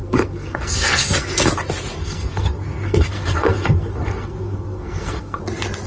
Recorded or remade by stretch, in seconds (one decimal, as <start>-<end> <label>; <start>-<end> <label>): 0.0-1.5 remade; 1.5-2.0 recorded; 2.0-5.4 remade; 5.4-5.9 recorded

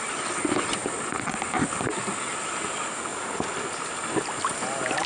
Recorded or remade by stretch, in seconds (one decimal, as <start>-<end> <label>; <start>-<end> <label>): 0.0-5.1 recorded

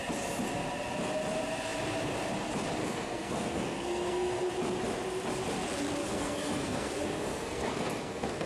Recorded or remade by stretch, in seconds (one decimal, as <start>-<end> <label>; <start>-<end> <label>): 0.0-2.8 recorded; 2.8-4.5 remade; 4.5-6.0 recorded; 6.0-8.5 remade

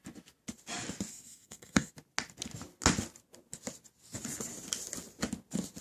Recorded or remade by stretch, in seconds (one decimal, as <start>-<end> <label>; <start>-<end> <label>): 0.0-1.1 recorded; 1.1-1.9 remade; 1.9-5.8 recorded

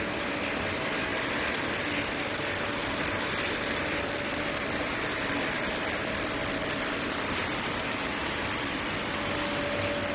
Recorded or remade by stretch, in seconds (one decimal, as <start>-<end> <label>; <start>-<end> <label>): 0.0-10.1 recorded

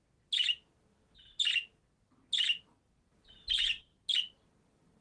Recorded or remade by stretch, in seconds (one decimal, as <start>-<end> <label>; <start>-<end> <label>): 0.0-5.0 recorded

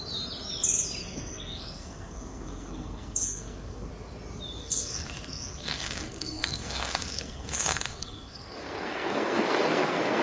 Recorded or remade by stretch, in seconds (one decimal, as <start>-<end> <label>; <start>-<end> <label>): 0.0-1.0 recorded; 1.0-3.9 remade; 3.9-4.6 recorded; 4.6-10.2 remade